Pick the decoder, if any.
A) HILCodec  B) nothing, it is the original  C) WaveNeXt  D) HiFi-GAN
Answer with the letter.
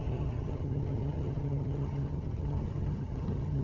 D